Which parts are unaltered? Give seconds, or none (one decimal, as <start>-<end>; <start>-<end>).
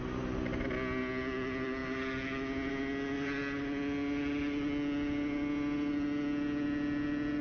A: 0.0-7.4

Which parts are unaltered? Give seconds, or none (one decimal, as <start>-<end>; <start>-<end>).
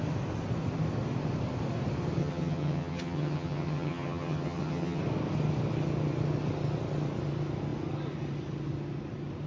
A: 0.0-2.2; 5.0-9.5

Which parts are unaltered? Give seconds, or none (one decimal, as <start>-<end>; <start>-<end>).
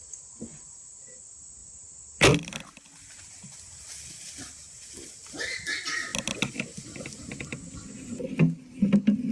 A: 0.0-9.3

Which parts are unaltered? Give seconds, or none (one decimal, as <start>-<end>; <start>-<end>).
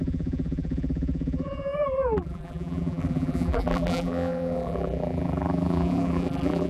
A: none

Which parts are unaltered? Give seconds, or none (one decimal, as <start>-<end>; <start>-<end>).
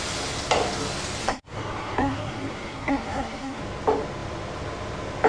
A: 0.0-1.2; 3.6-5.3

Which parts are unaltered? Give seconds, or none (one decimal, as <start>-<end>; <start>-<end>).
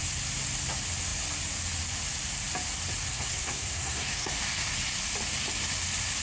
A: 0.0-3.1; 4.3-6.2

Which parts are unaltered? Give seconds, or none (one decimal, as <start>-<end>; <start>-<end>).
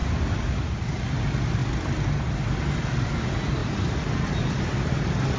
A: 0.9-3.6; 4.9-5.4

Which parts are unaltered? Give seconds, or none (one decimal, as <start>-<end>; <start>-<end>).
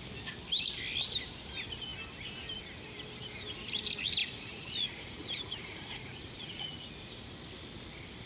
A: 0.0-4.2; 6.9-8.3